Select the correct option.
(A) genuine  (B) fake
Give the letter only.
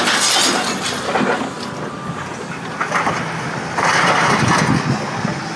A